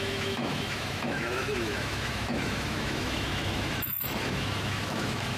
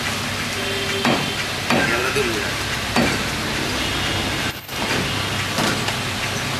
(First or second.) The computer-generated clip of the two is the first